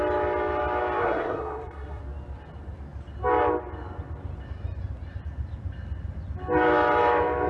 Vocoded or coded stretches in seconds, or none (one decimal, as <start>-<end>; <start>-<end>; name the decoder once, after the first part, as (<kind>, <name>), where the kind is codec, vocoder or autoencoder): 1.0-2.0 (codec, SNAC)